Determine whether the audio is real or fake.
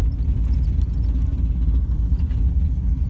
real